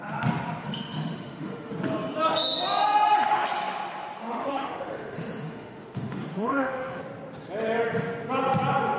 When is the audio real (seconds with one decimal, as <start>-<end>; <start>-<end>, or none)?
0.0-0.6; 1.7-4.2; 7.0-9.0